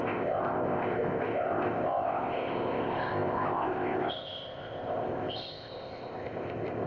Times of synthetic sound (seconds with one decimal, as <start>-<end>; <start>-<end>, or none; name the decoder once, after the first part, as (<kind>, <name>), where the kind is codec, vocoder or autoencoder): 0.0-6.9 (codec, ZipCodec)